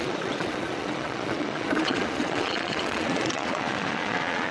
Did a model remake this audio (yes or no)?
yes